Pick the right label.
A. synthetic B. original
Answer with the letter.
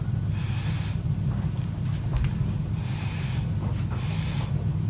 B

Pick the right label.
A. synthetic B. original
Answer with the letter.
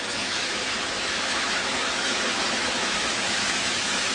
A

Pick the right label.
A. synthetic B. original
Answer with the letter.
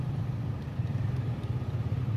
B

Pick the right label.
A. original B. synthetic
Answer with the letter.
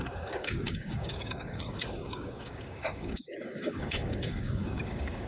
B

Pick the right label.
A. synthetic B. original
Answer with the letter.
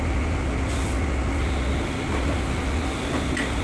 B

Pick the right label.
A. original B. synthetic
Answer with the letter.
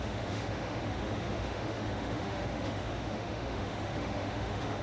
B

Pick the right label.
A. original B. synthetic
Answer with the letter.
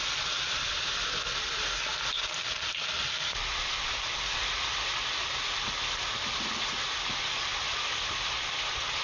B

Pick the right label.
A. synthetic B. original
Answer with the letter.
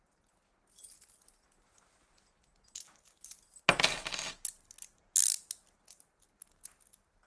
B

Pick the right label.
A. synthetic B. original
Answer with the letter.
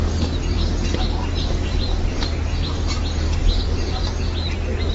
B